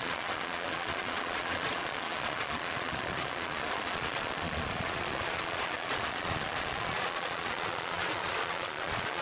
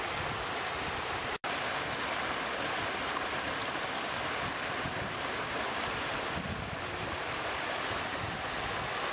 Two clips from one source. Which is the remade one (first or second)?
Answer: first